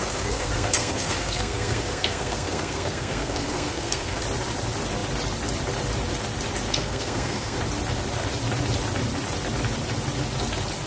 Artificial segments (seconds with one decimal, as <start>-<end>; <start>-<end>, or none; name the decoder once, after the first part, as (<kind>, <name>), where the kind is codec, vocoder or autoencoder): 0.0-4.2 (codec, SNAC); 6.7-7.6